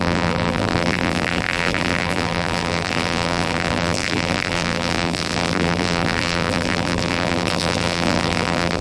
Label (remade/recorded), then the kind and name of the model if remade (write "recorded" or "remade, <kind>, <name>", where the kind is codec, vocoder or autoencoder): remade, vocoder, BigVGAN v2